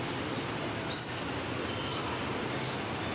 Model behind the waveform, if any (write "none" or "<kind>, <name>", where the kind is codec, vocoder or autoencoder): none